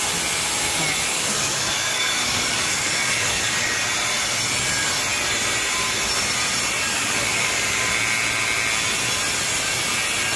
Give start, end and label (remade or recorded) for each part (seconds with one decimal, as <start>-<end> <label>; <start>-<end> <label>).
0.0-1.1 recorded; 1.1-3.8 remade; 3.8-6.9 recorded; 6.9-7.5 remade; 7.5-10.4 recorded